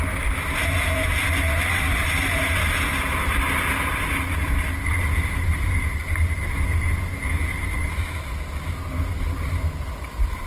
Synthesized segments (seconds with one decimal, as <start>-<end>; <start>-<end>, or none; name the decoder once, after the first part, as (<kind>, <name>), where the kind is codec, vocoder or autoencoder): 2.9-4.0 (vocoder, BigVGAN v2); 7.7-9.1